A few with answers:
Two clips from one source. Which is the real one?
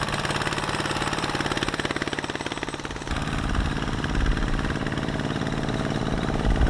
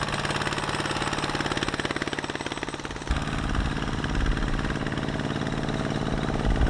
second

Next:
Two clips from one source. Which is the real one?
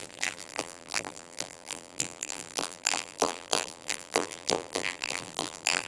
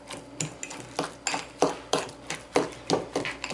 second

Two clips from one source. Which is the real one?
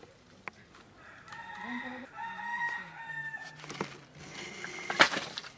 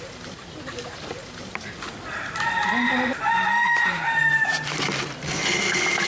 first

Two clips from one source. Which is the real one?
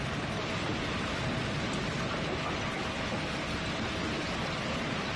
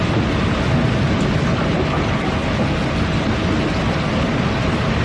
second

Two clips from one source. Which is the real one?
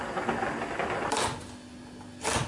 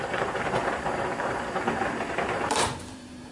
first